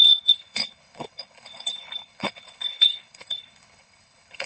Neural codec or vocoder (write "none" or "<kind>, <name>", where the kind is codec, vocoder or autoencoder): codec, HILCodec